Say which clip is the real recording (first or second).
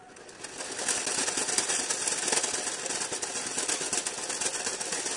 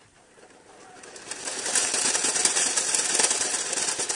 first